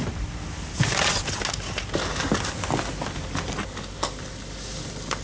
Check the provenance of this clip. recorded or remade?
recorded